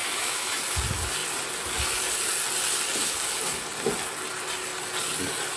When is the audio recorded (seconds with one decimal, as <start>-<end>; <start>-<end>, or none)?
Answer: 0.6-5.6